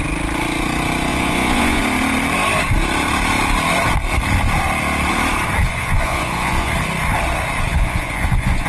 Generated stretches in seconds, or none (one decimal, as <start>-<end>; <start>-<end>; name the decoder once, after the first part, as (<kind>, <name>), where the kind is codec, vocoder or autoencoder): 1.1-1.8 (vocoder, Vocos); 5.6-6.7; 7.7-8.7

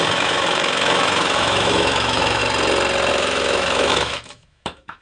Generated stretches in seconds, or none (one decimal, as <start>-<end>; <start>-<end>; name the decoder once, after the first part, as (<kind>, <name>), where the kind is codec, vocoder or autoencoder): 0.0-2.4 (autoencoder, DAC-VAE); 3.1-5.0

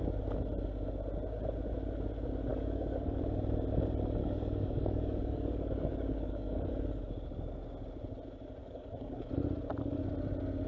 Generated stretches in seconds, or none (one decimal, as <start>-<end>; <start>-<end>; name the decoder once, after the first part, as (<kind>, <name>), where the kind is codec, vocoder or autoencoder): 2.5-3.2 (codec, DAC); 4.2-6.7; 8.6-9.3

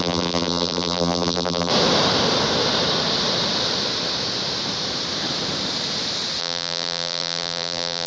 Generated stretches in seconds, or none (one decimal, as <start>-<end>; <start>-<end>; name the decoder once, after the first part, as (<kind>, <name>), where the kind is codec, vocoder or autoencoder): 0.0-1.7 (vocoder, BigVGAN v2); 6.4-8.1

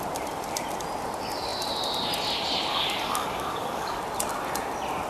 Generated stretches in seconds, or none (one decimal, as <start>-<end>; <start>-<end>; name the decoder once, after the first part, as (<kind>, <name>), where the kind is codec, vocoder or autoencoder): 2.7-4.0 (codec, DAC)

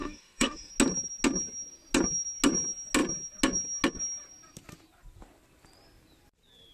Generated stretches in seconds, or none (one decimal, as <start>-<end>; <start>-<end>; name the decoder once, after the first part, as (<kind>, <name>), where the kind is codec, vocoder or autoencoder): 0.0-0.7 (autoencoder, DAC-VAE)

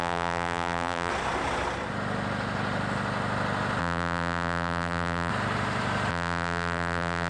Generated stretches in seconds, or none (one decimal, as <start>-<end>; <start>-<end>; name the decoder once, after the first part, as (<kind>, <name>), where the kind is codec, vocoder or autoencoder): 0.0-1.1 (vocoder, BigVGAN v2); 3.8-5.3; 6.1-7.3